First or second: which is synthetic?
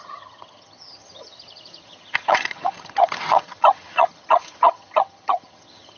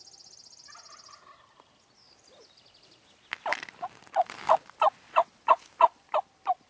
first